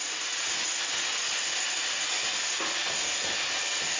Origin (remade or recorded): recorded